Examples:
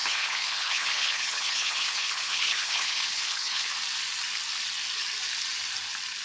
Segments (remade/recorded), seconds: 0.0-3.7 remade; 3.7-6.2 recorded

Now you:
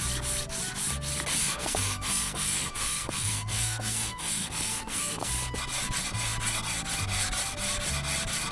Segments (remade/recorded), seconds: 0.0-1.4 recorded; 1.4-5.3 remade; 5.3-8.5 recorded

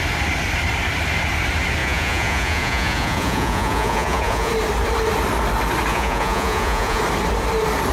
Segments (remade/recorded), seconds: 0.0-1.8 recorded; 1.8-4.5 remade; 4.5-5.9 recorded; 5.9-7.0 remade; 7.0-7.9 recorded

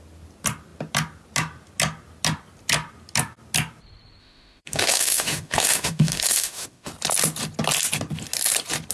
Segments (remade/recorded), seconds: 0.0-4.2 recorded; 4.2-6.9 remade; 6.9-8.9 recorded

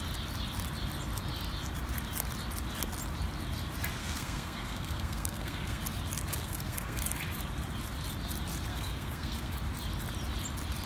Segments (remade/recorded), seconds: 0.0-4.0 recorded; 4.0-5.8 remade; 5.8-6.3 recorded; 6.3-7.0 remade; 7.0-8.7 recorded; 8.7-9.5 remade; 9.5-10.9 recorded

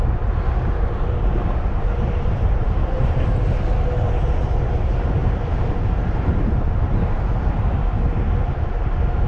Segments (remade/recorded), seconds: 0.0-1.3 recorded; 1.3-3.3 remade; 3.3-5.2 recorded; 5.2-6.8 remade; 6.8-9.3 recorded

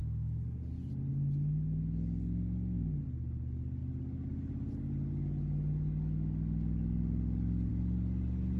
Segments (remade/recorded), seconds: 0.0-8.6 recorded

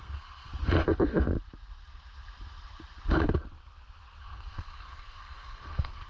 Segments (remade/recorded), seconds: 0.0-0.5 remade; 0.5-4.2 recorded; 4.2-6.1 remade